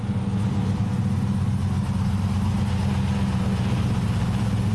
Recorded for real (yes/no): yes